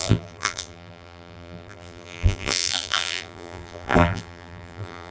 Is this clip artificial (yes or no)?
yes